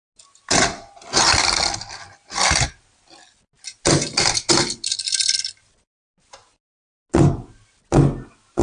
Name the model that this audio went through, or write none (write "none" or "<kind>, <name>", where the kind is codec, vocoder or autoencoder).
none